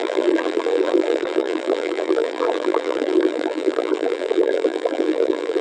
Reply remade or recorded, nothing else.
remade